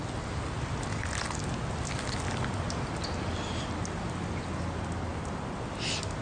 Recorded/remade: recorded